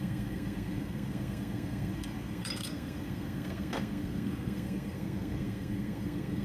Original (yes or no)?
no